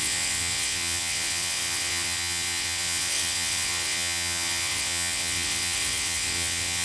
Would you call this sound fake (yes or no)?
yes